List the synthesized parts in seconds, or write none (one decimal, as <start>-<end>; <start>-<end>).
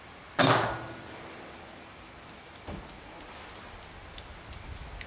none